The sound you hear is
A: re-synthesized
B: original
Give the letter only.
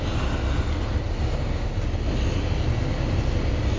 B